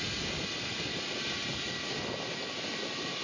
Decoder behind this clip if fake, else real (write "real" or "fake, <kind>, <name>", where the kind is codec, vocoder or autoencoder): real